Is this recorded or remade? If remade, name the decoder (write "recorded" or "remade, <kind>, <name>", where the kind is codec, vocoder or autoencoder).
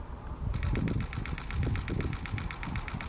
recorded